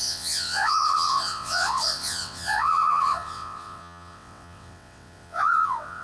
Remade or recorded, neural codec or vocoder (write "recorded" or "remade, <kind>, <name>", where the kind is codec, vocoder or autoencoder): remade, vocoder, WaveNeXt